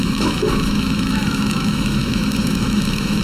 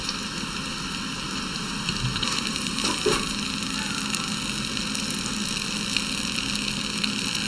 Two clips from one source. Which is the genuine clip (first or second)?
second